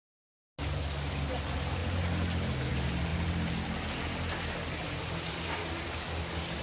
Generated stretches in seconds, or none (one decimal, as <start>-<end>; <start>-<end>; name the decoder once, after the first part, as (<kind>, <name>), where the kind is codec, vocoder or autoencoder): none